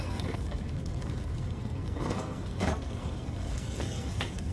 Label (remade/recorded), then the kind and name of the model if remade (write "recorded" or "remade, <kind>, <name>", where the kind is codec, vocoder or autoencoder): remade, codec, SNAC